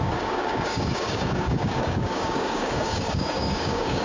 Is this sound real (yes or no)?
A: no